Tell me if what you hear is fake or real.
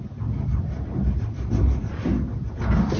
fake